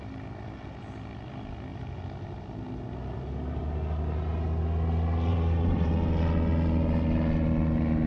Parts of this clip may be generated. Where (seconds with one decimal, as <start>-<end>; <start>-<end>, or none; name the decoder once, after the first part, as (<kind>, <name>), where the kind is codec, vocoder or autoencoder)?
5.3-5.9 (vocoder, BigVGAN v2)